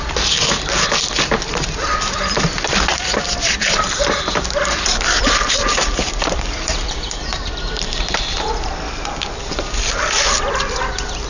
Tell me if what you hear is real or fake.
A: fake